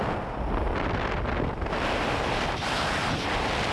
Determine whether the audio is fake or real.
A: real